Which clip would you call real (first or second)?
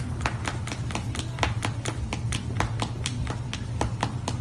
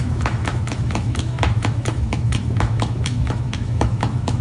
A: first